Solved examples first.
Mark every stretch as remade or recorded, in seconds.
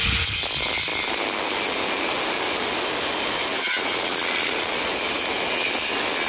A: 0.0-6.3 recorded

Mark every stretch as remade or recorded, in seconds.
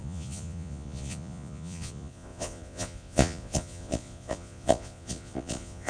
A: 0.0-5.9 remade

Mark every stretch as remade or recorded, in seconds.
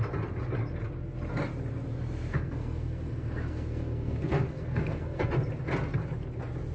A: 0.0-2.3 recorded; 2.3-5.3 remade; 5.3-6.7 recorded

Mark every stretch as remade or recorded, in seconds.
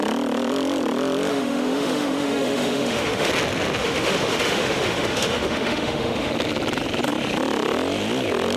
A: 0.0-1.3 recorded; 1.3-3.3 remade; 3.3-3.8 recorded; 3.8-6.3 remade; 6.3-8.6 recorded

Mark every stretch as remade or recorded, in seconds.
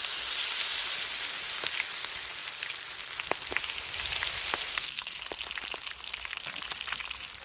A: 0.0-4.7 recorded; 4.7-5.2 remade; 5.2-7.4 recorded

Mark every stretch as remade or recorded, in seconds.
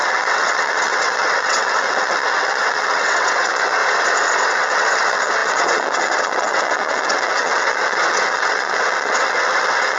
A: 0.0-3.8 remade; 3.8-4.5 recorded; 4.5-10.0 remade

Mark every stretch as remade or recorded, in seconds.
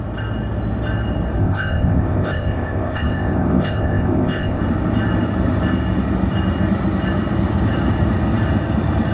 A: 0.0-1.4 recorded; 1.4-4.6 remade; 4.6-9.1 recorded